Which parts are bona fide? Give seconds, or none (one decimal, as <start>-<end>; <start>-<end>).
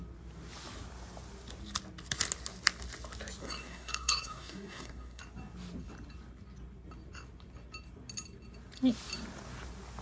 0.0-3.4; 5.2-10.0